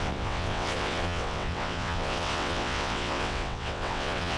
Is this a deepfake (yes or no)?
yes